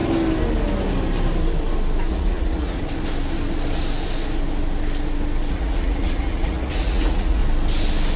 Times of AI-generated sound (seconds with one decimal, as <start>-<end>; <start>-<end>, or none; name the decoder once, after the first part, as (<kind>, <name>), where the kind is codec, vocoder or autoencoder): 2.1-2.8 (vocoder, Vocos); 5.5-7.4